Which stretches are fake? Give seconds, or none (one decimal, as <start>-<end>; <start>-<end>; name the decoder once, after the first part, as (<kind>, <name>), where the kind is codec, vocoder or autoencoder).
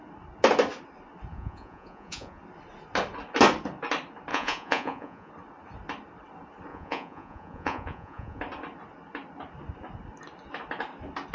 1.3-2.4 (vocoder, Vocos); 4.3-5.3; 6.7-8.4